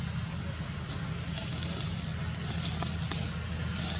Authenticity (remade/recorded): recorded